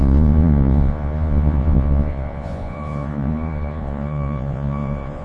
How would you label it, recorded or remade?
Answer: remade